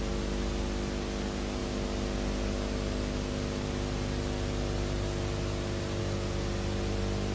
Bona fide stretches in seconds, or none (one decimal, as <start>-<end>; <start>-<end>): 0.0-7.3